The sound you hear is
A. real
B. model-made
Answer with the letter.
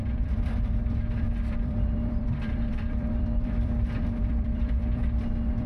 B